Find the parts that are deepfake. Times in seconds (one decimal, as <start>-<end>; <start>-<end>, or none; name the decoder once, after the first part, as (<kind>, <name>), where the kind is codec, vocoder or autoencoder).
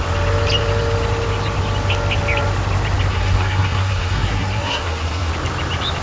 3.1-5.3 (codec, SNAC)